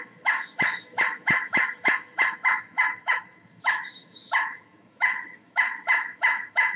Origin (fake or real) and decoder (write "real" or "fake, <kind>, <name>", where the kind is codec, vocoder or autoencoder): fake, autoencoder, DAC-VAE